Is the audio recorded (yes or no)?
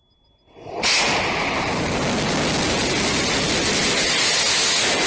yes